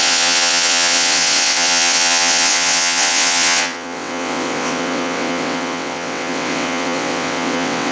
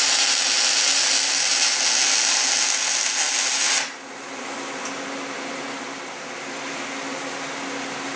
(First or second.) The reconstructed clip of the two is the first